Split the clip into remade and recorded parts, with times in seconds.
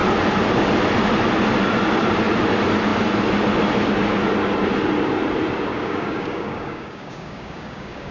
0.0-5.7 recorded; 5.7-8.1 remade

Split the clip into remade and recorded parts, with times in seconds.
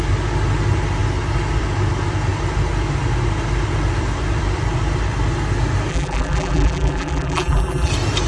0.0-5.9 recorded; 5.9-7.9 remade; 7.9-8.3 recorded